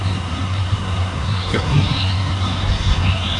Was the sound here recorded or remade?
remade